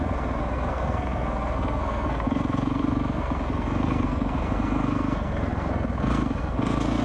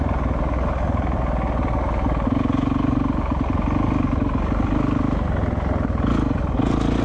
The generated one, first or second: first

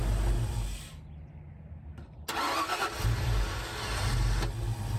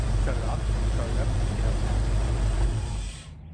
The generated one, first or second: second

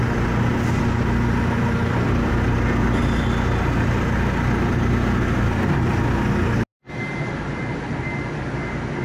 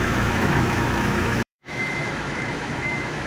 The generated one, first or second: second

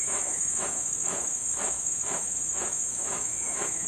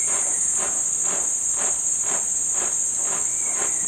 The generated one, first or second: first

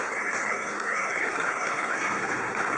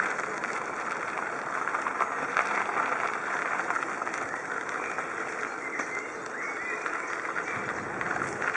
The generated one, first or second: first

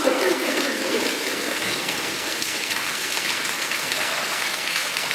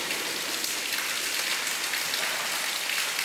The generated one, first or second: first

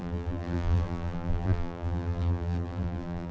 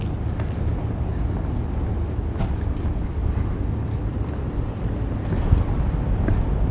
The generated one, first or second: first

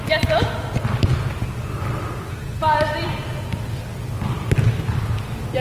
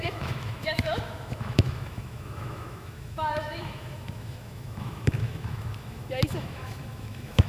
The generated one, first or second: second